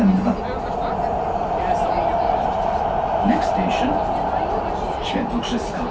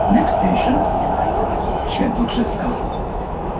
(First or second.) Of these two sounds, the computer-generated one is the second